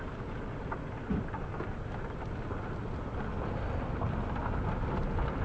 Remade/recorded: recorded